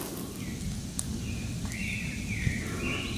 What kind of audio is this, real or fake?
real